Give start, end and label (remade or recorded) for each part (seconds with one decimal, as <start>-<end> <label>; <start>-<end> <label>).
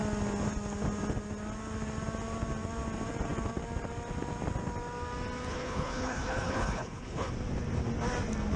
0.0-5.5 recorded; 5.5-7.3 remade; 7.3-8.6 recorded